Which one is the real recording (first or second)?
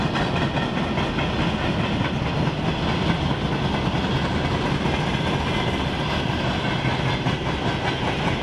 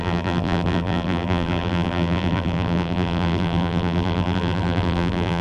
first